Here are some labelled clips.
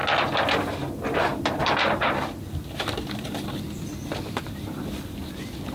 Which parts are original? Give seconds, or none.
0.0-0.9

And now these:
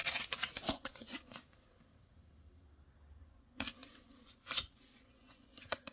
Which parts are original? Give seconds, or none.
0.0-0.7; 1.4-3.2

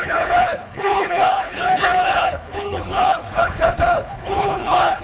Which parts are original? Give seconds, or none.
none

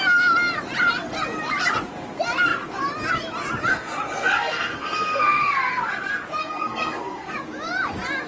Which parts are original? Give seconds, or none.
0.0-3.7; 5.7-6.4; 7.3-8.3